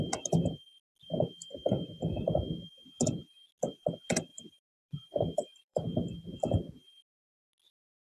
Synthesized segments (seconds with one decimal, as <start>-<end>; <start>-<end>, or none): 4.3-6.0